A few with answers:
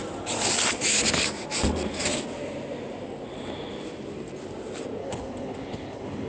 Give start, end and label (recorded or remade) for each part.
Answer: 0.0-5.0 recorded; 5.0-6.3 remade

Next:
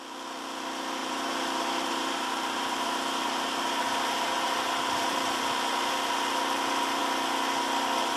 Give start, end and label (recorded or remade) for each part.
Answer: 0.0-1.0 recorded; 1.0-5.4 remade; 5.4-8.2 recorded

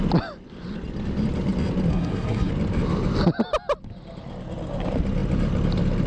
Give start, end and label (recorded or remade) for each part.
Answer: 0.0-1.9 recorded; 1.9-2.5 remade; 2.5-6.1 recorded

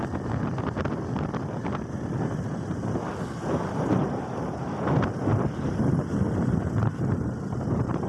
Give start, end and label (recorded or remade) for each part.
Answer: 0.0-4.0 recorded; 4.0-4.6 remade; 4.6-8.1 recorded

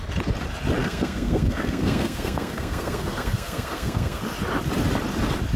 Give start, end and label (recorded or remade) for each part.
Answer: 0.0-0.8 recorded; 0.8-4.2 remade; 4.2-5.6 recorded

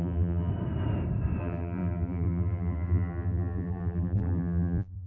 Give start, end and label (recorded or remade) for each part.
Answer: 0.0-0.5 remade; 0.5-1.4 recorded; 1.4-5.1 remade

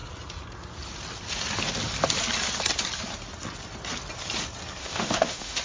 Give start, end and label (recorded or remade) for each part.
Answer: 0.0-4.8 recorded; 4.8-5.6 remade